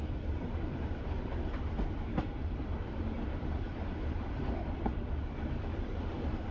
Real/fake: fake